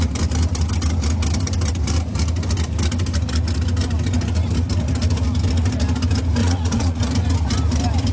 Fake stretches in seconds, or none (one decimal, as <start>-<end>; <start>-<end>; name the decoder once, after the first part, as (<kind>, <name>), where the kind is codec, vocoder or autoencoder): 6.4-7.0 (vocoder, Vocos)